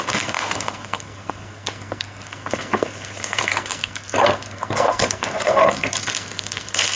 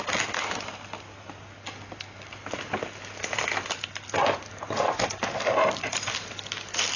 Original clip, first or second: second